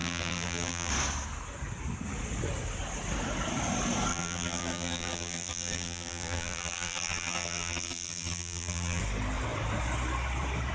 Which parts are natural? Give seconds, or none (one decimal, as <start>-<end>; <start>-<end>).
0.9-4.1; 9.0-10.7